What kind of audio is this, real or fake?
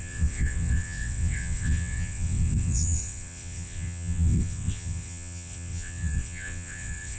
fake